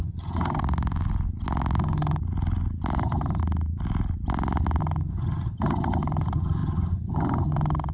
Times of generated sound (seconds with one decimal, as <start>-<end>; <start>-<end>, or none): 0.0-0.6; 1.8-2.2; 3.0-3.4; 4.8-7.9